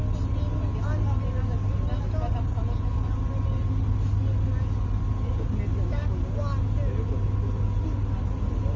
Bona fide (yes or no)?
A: yes